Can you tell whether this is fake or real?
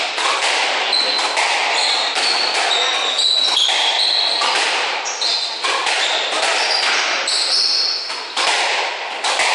real